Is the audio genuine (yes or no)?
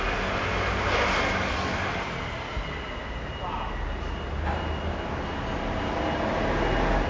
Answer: yes